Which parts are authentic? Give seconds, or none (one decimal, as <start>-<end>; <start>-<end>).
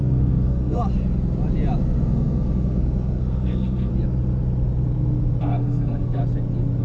0.8-1.8; 3.9-5.4; 6.2-6.8